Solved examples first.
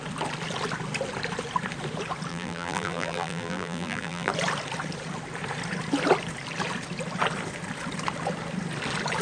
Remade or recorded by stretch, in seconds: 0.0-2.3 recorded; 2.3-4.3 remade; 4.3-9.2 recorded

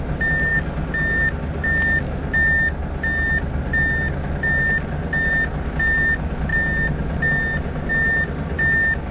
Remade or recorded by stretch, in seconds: 0.0-9.1 recorded